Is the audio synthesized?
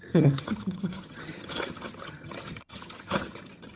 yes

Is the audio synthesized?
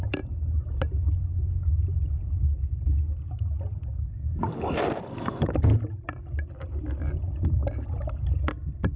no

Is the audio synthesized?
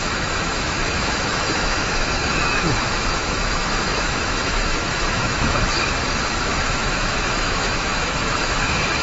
yes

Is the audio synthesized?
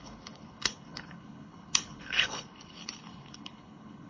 yes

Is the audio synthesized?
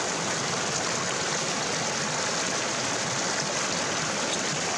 no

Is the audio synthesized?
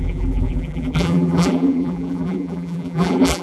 yes